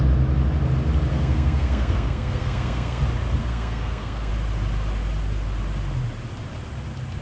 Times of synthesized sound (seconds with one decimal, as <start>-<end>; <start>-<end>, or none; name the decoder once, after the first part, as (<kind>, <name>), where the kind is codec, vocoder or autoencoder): 1.1-3.0 (codec, SNAC); 3.4-4.3